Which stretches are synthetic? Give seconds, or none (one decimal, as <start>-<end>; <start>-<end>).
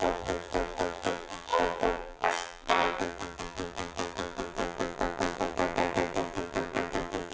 0.0-7.3